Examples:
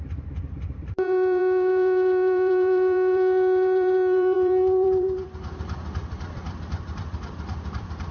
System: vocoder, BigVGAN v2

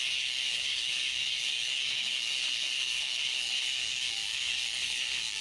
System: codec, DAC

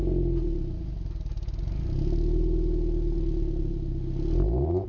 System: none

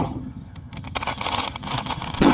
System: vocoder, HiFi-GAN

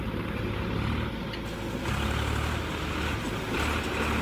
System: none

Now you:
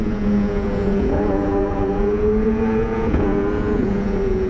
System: vocoder, Vocos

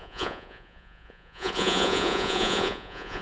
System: vocoder, Vocos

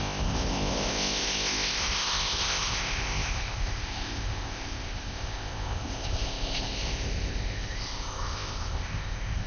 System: codec, ZipCodec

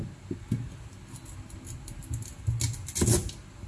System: none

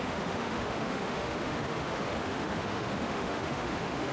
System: autoencoder, DAC-VAE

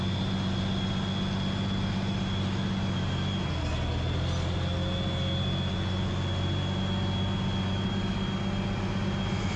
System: none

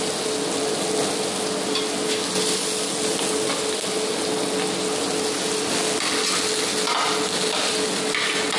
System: none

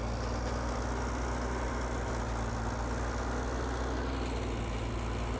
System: none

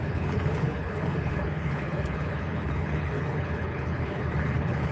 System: codec, HILCodec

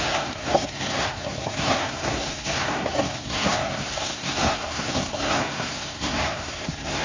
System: codec, SNAC